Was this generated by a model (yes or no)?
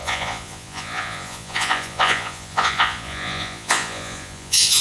yes